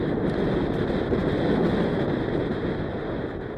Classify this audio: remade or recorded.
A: recorded